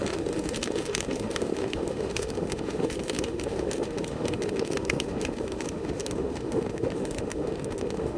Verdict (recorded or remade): remade